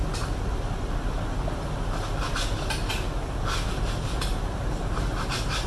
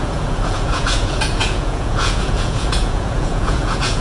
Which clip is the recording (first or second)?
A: first